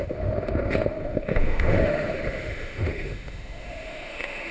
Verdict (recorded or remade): remade